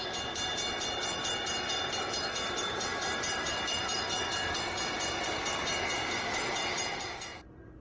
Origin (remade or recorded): remade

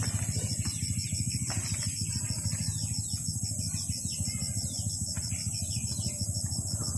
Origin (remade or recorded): recorded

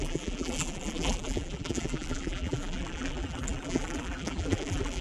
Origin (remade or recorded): remade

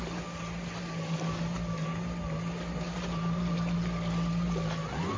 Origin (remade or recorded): recorded